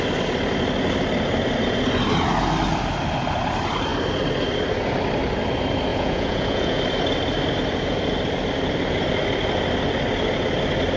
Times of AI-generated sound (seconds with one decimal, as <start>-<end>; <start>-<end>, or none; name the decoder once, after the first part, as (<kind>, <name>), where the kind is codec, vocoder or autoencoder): 5.9-6.8 (vocoder, Vocos)